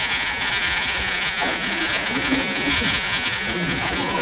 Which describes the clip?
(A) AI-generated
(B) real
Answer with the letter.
A